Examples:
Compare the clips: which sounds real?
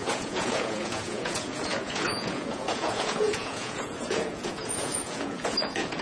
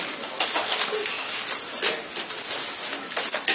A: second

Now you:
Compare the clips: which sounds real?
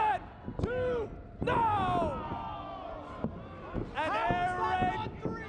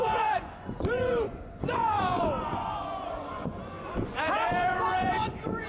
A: first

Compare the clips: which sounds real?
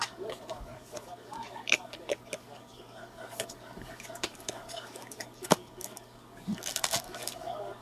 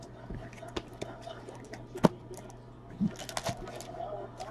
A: second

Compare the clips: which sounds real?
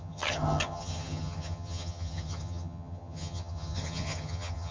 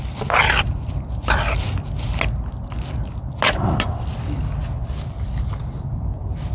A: second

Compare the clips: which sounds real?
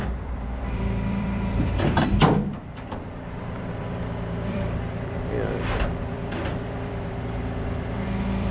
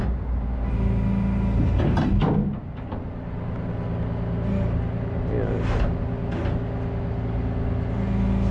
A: second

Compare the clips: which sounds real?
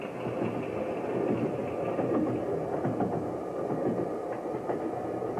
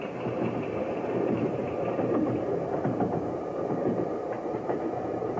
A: first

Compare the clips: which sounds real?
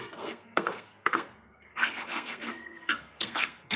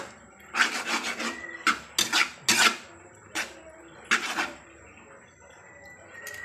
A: second